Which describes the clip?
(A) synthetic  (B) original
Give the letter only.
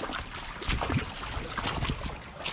B